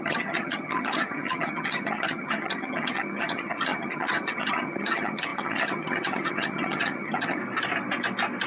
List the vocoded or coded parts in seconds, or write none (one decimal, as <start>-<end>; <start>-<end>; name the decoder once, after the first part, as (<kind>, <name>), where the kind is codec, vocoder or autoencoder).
0.0-7.4 (vocoder, HiFi-GAN)